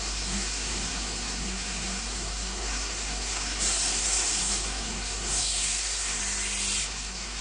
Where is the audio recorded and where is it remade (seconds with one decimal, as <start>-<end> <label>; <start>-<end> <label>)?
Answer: 0.0-6.2 remade; 6.2-6.8 recorded; 6.8-7.4 remade